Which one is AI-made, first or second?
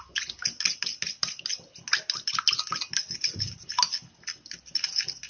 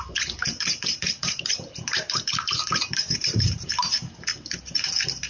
second